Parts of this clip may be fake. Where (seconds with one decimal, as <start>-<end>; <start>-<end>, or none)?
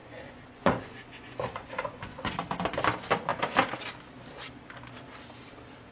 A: 0.0-2.6